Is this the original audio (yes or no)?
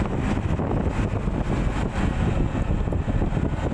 yes